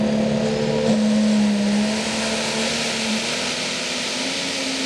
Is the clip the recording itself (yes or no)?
yes